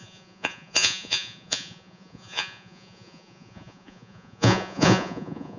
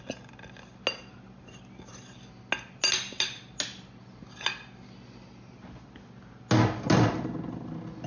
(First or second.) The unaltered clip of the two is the second